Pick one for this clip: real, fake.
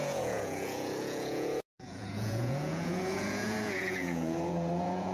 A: fake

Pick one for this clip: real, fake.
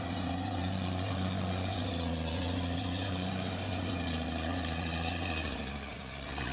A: fake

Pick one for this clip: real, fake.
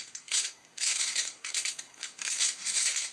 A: fake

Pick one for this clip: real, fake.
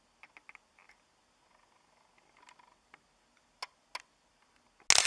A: real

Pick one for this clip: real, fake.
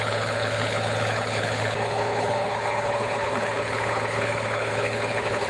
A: fake